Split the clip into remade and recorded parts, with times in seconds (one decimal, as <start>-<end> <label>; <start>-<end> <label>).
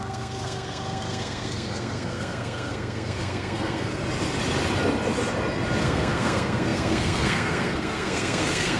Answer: 0.0-4.0 remade; 4.0-5.8 recorded; 5.8-8.8 remade